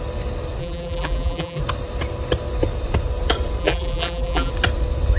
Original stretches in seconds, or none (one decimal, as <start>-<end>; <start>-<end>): 0.0-0.6; 1.6-3.6; 4.5-5.2